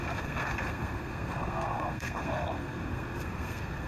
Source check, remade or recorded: remade